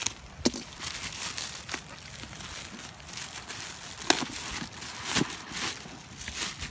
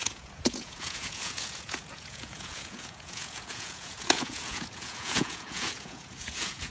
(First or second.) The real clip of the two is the first